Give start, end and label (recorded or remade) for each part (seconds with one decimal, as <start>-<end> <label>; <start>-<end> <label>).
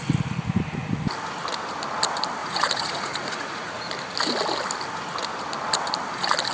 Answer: 0.0-2.4 recorded; 2.4-3.9 remade; 3.9-6.5 recorded